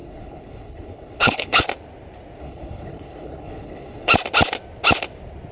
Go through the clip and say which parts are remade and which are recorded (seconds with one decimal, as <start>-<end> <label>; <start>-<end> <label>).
0.0-1.6 remade; 1.6-2.4 recorded; 2.4-4.1 remade; 4.1-5.5 recorded